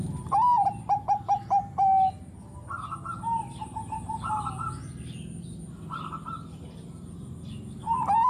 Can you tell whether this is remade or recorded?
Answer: recorded